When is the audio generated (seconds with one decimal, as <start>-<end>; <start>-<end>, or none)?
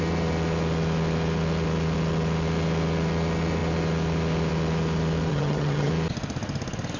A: 5.3-5.9